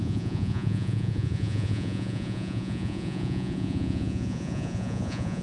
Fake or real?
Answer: fake